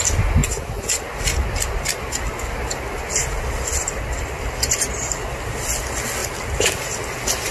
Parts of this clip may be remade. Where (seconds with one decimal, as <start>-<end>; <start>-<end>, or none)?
3.2-4.9; 6.2-7.5